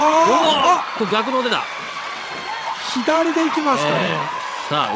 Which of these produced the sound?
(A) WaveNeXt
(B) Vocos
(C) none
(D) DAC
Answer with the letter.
A